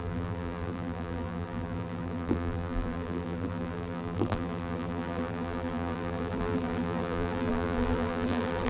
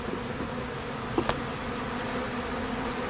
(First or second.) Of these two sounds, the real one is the second